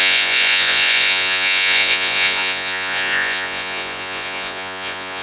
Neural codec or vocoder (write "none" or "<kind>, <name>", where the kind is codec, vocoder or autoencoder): vocoder, Vocos